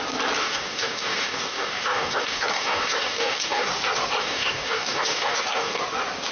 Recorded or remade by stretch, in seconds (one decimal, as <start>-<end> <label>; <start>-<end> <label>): 0.0-0.4 recorded; 0.4-3.7 remade; 3.7-4.2 recorded; 4.2-5.8 remade; 5.8-6.3 recorded